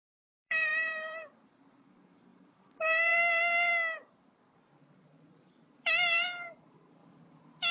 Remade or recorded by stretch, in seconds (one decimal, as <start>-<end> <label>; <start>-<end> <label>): 0.0-7.0 remade; 7.0-7.7 recorded